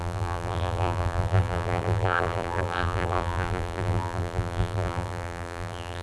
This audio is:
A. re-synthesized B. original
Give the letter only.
A